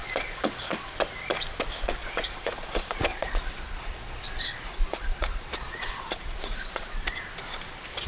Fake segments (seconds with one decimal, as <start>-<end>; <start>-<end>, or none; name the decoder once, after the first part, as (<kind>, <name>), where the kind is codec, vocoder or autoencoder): 0.0-0.9 (vocoder, Vocos); 2.0-6.9

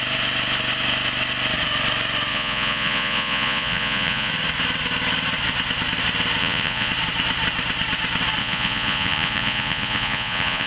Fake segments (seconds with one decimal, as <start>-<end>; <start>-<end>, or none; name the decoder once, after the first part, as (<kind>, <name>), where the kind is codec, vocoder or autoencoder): 2.3-4.3 (vocoder, Vocos); 6.4-6.9; 8.4-10.7

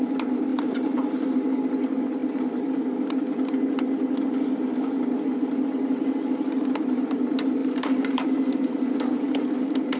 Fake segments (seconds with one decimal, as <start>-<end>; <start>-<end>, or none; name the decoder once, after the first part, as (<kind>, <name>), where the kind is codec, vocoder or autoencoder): 0.5-1.7 (vocoder, BigVGAN v2); 7.6-8.8

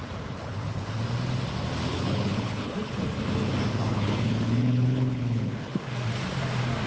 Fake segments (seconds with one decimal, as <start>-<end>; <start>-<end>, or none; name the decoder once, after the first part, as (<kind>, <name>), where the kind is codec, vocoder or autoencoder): 0.4-1.0 (codec, HILCodec); 1.9-3.0; 3.7-5.8

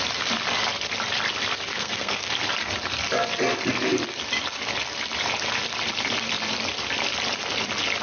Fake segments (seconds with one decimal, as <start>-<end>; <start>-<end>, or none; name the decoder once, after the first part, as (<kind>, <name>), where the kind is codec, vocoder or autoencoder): 1.7-2.3 (codec, SNAC)

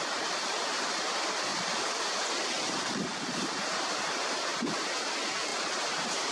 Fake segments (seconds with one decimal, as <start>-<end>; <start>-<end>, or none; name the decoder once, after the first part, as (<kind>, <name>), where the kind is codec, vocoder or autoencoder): none

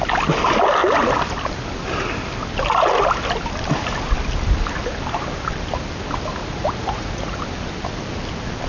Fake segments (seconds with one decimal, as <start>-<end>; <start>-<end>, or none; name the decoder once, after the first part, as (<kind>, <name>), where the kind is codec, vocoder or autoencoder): 6.4-7.4 (vocoder, Vocos)

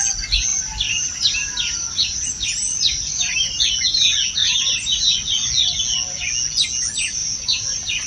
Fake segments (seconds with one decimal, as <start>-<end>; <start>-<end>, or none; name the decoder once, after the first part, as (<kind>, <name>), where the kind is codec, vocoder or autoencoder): 0.5-3.6 (vocoder, BigVGAN v2); 4.4-5.0; 7.2-8.1